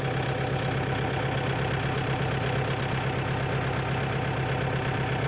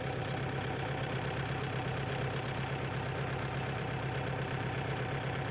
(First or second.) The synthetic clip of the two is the second